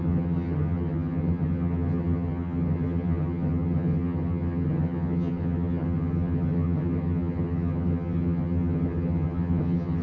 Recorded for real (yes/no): no